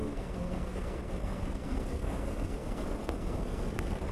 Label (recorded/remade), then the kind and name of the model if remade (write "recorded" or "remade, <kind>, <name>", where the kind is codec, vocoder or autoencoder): remade, codec, SNAC